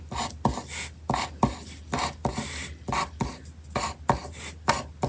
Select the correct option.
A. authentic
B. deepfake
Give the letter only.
A